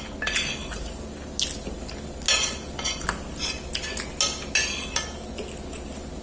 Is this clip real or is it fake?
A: real